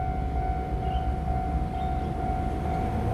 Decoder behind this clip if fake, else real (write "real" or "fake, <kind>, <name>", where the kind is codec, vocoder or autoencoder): real